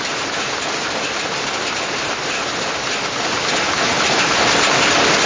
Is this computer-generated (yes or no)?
no